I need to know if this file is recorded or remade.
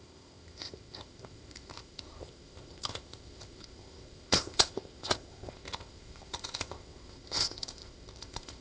remade